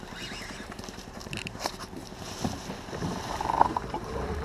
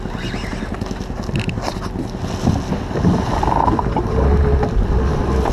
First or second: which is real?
second